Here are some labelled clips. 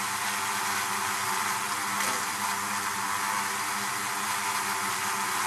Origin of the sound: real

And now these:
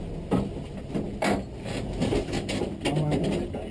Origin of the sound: real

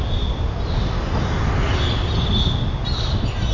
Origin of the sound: real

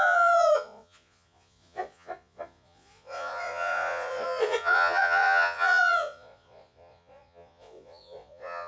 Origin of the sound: fake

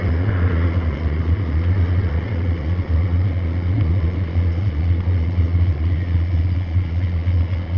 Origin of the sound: fake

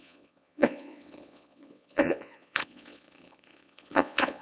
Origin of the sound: fake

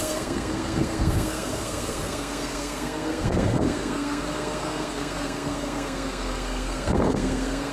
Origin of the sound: fake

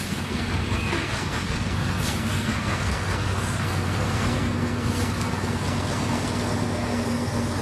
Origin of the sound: fake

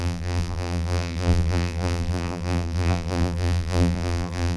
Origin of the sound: fake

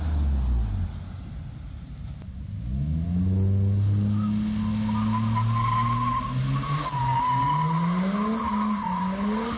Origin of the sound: real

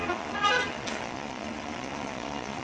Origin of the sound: fake